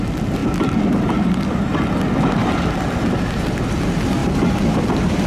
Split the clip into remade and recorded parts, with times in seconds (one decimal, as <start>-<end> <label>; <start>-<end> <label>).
0.0-0.4 recorded; 0.4-3.6 remade; 3.6-4.2 recorded; 4.2-4.8 remade; 4.8-5.3 recorded